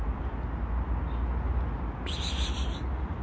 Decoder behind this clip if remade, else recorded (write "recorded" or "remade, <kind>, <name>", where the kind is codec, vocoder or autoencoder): recorded